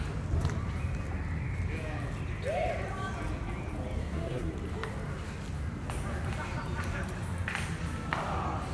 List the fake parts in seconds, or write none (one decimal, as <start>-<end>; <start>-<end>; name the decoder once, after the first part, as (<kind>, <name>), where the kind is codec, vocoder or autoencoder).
4.0-4.5 (codec, SNAC)

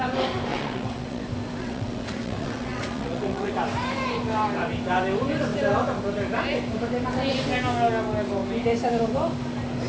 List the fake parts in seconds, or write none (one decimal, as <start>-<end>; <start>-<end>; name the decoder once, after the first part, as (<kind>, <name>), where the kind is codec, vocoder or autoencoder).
0.5-1.2 (vocoder, WaveNeXt); 1.6-3.5

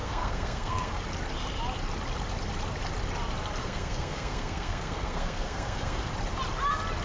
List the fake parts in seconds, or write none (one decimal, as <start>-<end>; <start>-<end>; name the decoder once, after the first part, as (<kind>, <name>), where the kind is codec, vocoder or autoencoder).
0.0-1.0 (codec, SNAC); 3.6-6.1

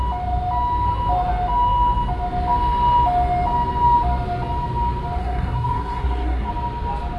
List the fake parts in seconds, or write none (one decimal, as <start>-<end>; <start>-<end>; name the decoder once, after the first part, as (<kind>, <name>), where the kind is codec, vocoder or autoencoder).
5.2-6.5 (codec, SNAC)

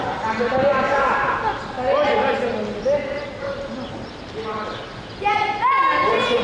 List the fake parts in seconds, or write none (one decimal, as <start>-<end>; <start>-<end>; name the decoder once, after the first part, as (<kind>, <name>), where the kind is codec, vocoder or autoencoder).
none

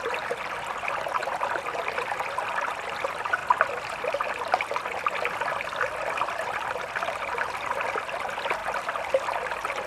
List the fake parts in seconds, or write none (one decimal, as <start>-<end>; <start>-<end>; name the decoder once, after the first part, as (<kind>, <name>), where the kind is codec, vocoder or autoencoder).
8.6-9.3 (vocoder, BigVGAN v2)

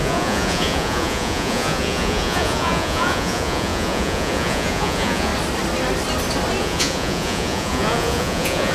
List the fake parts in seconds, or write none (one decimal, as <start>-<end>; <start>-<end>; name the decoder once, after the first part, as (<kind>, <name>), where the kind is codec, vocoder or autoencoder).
0.0-5.3 (vocoder, Vocos); 6.6-8.7